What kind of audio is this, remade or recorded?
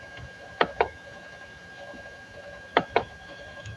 remade